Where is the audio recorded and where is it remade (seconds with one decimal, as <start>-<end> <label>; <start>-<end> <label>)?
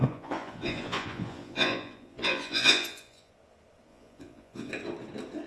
0.0-3.3 remade; 3.3-3.9 recorded; 3.9-4.7 remade; 4.7-5.5 recorded